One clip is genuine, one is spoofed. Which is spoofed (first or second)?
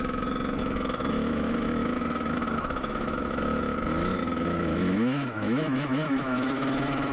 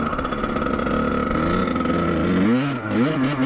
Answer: first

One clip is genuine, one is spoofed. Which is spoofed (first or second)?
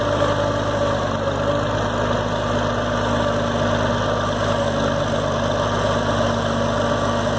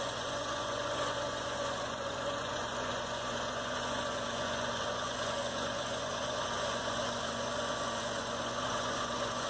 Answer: second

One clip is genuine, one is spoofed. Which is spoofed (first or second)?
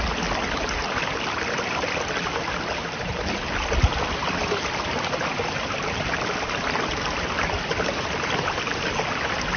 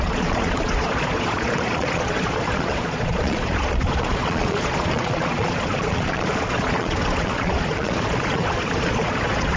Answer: second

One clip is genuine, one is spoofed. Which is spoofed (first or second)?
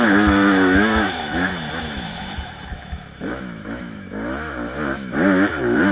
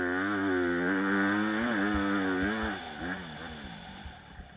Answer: first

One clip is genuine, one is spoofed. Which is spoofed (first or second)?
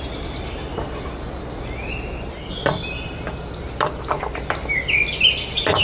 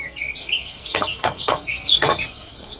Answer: second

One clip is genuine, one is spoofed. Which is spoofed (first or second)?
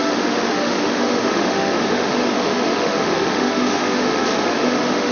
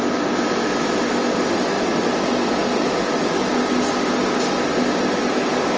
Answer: first